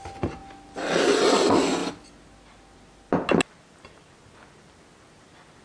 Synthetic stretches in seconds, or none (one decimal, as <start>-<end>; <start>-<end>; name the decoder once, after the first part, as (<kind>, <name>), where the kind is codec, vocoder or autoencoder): none